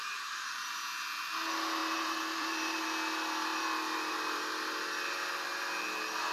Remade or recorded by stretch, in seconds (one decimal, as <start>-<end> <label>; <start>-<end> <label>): 0.0-1.8 recorded; 1.8-2.8 remade; 2.8-3.5 recorded; 3.5-5.5 remade; 5.5-6.3 recorded